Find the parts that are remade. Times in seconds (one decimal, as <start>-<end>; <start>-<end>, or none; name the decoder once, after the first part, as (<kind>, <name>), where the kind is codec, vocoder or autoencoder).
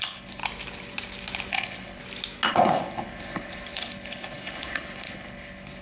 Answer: 0.0-0.4 (codec, HILCodec); 1.5-2.0; 2.5-5.8